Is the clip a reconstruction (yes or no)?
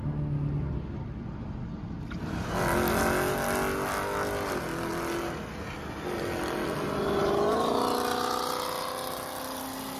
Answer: no